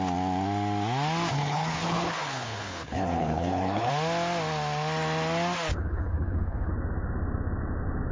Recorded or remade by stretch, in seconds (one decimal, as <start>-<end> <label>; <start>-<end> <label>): 0.0-1.3 recorded; 1.3-3.9 remade; 3.9-5.7 recorded; 5.7-6.7 remade; 6.7-8.1 recorded

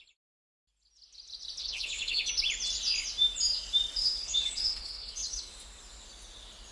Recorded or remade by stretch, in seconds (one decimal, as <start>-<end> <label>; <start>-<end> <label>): 0.0-1.6 recorded; 1.6-2.3 remade; 2.3-4.0 recorded; 4.0-5.5 remade; 5.5-6.7 recorded